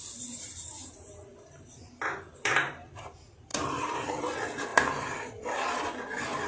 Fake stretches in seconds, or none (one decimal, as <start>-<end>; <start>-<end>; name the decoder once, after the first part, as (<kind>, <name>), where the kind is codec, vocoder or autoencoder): none